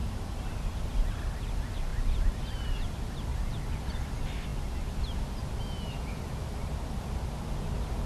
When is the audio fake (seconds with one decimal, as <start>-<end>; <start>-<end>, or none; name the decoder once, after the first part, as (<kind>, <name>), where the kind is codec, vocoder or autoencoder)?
0.0-0.8 (vocoder, BigVGAN v2); 1.9-2.4